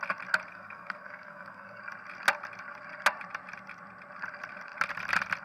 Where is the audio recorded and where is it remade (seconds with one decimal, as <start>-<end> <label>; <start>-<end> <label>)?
0.0-0.5 recorded; 0.5-1.8 remade; 1.8-5.4 recorded